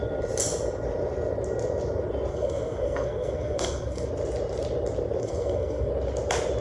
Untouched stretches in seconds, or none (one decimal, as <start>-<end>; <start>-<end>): 0.0-2.3; 4.1-5.2; 5.9-6.6